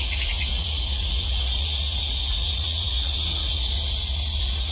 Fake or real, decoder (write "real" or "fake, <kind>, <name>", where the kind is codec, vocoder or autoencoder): fake, vocoder, Vocos